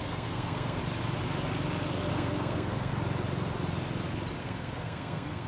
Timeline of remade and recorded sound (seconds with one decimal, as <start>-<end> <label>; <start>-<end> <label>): 0.0-0.8 remade; 0.8-2.1 recorded; 2.1-2.9 remade; 2.9-4.4 recorded; 4.4-5.5 remade